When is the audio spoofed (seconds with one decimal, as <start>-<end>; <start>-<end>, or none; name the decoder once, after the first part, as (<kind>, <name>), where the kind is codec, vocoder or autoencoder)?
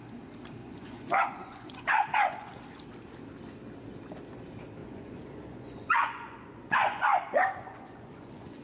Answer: 0.6-2.5 (vocoder, Vocos); 4.8-8.6